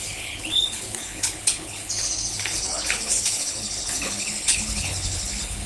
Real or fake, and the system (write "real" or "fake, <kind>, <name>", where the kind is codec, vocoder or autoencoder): fake, codec, HILCodec